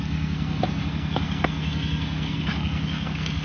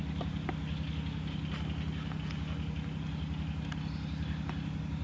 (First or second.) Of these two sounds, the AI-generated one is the first